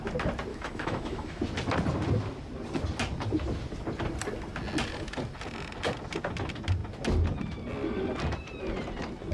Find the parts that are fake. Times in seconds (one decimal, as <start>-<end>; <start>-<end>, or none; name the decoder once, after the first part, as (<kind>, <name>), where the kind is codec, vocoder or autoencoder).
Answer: 0.5-1.4 (autoencoder, DAC-VAE)